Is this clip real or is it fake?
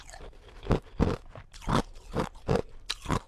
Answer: real